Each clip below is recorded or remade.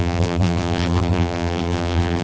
remade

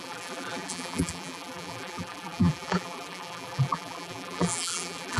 remade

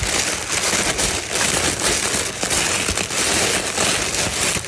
recorded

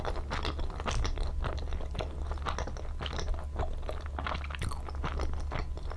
recorded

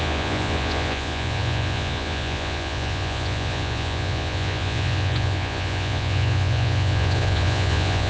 remade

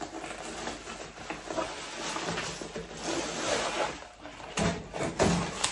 recorded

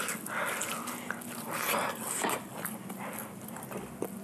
recorded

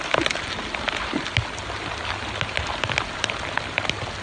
recorded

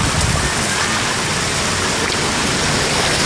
recorded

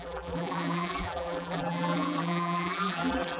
remade